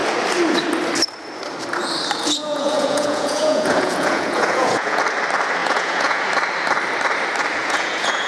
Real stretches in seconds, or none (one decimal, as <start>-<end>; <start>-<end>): 0.0-2.4; 5.0-5.6; 6.2-7.6